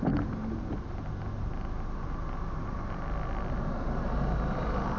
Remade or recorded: recorded